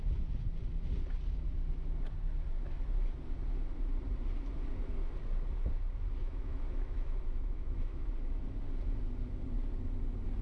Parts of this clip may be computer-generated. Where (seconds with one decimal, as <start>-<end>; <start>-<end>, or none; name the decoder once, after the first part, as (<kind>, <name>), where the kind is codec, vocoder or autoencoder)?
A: 6.2-8.1 (autoencoder, DAC-VAE)